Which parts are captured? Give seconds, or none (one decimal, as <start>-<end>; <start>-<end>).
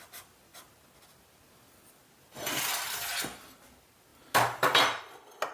0.0-5.5